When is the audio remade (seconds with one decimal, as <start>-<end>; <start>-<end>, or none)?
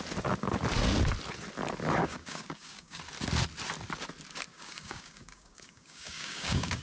2.0-3.0; 4.5-6.8